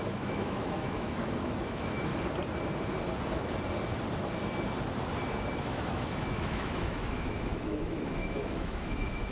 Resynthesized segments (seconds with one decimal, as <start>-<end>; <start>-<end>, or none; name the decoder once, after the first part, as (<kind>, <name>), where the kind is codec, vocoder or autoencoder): 0.0-2.1 (autoencoder, DAC-VAE); 5.6-9.3